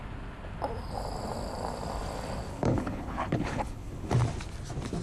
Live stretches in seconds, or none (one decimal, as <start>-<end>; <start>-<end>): 0.0-2.5; 4.1-5.0